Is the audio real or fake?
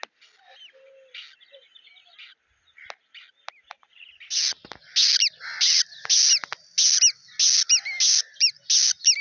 real